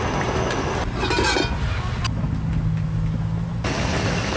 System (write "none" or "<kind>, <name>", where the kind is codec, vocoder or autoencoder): none